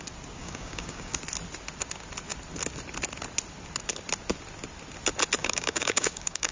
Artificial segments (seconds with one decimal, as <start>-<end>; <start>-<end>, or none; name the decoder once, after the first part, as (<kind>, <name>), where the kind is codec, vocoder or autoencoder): 0.4-1.2 (codec, DAC); 5.4-6.5